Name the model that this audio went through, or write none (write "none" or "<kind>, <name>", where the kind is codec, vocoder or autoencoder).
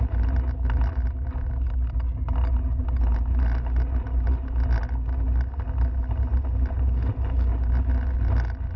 none